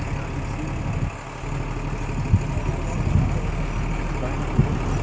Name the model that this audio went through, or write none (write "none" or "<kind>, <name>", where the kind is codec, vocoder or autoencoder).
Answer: none